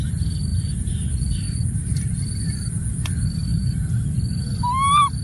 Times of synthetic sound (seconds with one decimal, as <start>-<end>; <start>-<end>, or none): 0.5-2.1; 3.5-4.1

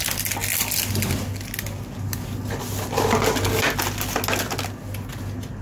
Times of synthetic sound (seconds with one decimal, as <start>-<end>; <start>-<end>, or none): none

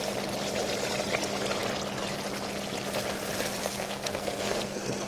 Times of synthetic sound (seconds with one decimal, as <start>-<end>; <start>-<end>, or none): 3.6-5.1

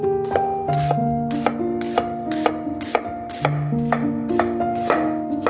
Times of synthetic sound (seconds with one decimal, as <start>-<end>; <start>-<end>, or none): none

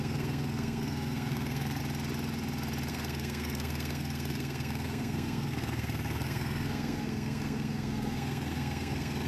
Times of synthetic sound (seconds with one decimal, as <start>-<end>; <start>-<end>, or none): 0.0-1.8; 2.9-9.3

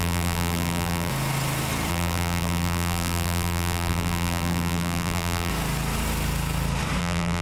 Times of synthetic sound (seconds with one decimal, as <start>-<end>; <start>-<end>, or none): 0.0-1.1; 1.9-5.5; 7.0-7.4